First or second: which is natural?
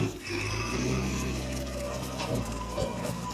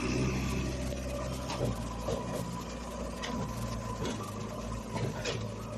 second